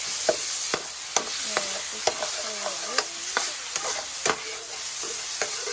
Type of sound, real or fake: real